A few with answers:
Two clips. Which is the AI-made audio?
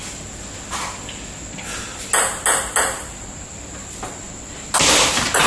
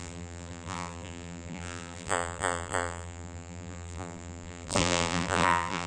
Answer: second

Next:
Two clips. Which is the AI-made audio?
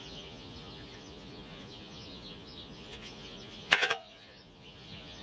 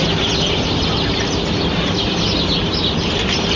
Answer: first